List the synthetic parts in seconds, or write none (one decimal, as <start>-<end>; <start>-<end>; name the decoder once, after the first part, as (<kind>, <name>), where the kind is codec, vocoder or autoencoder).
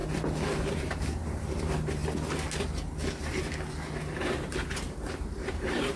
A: 0.6-2.0 (vocoder, BigVGAN v2); 4.1-6.0